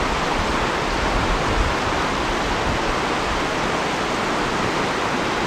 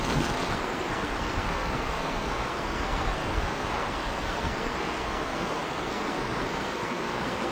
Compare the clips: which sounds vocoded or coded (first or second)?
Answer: second